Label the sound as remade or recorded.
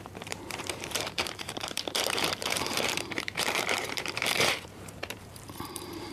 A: remade